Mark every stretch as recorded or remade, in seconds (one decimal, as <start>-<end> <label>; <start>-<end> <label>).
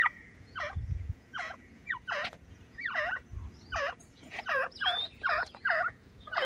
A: 0.0-3.3 remade; 3.3-3.8 recorded; 3.8-6.4 remade